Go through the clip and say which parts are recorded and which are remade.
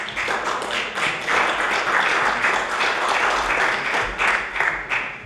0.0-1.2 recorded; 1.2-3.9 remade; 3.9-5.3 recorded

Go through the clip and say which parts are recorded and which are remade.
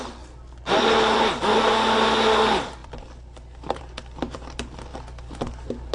0.0-2.8 recorded; 2.8-3.8 remade; 3.8-5.9 recorded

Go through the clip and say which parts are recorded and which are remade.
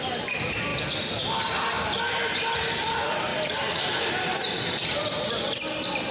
0.0-0.7 remade; 0.7-1.4 recorded; 1.4-3.3 remade; 3.3-6.1 recorded